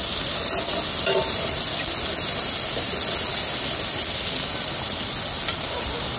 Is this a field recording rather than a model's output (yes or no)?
yes